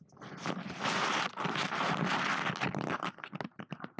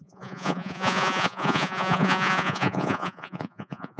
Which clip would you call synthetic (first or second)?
second